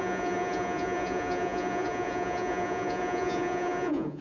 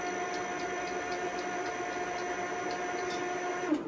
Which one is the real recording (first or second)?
second